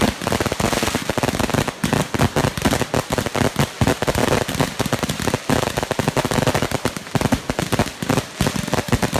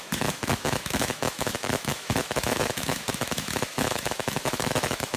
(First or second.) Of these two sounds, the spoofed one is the second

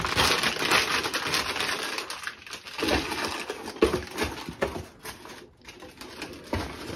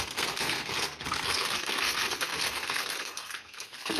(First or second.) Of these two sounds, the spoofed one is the second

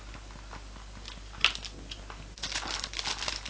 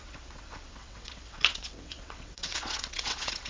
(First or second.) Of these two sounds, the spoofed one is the second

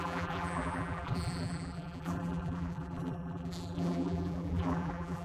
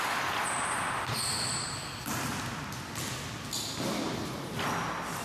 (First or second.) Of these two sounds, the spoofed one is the first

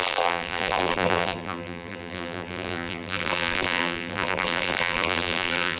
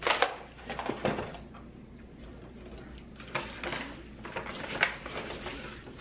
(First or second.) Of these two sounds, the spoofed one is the first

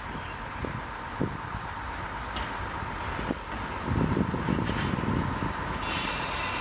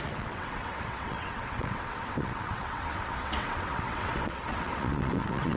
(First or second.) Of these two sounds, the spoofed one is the second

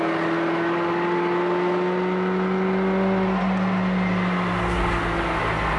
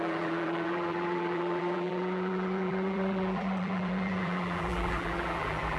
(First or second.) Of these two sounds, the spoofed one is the second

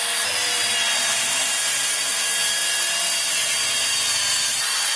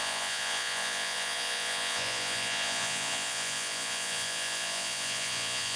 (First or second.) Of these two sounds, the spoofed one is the second